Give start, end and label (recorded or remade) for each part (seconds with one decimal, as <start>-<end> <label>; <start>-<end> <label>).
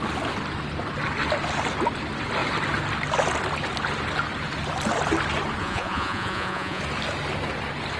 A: 0.0-5.6 recorded; 5.6-6.8 remade; 6.8-8.0 recorded